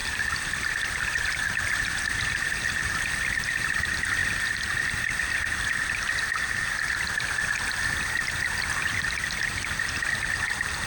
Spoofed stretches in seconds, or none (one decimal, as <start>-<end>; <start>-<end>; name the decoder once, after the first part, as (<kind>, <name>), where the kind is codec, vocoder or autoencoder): 0.0-3.2 (vocoder, BigVGAN v2)